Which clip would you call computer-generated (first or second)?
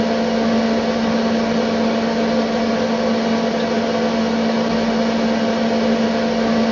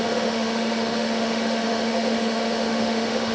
second